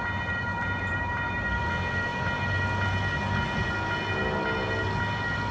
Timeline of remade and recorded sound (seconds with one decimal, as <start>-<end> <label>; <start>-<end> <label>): 0.0-0.5 recorded; 0.5-1.7 remade; 1.7-5.5 recorded